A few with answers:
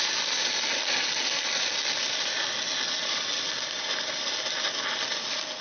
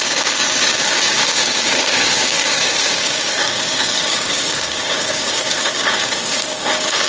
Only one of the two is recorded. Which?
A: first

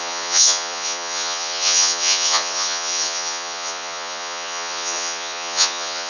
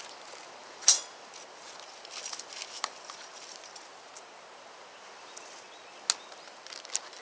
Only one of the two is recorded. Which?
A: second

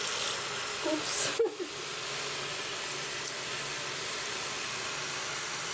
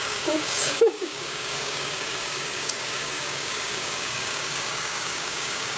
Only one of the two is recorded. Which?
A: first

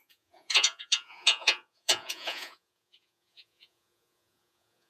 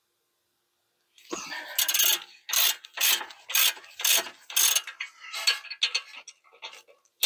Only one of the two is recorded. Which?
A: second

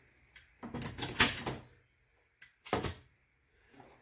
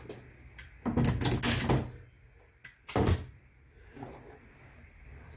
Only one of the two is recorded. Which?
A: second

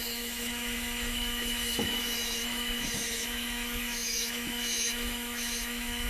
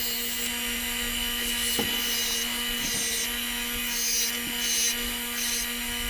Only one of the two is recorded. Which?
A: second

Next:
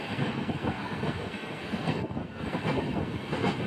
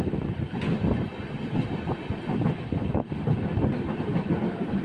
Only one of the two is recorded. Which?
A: second